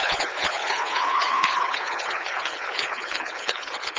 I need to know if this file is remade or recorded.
remade